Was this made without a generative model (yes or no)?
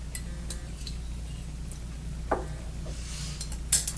yes